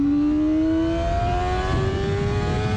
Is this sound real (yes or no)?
yes